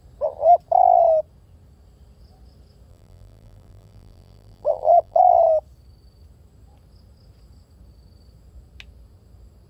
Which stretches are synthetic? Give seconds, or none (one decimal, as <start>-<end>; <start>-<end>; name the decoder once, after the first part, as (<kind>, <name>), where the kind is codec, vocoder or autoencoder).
2.9-5.3 (vocoder, BigVGAN v2)